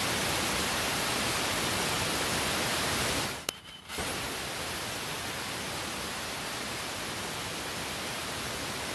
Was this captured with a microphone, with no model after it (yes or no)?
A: yes